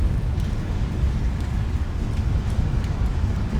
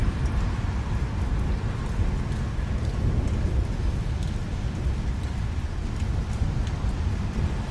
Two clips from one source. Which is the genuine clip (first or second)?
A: second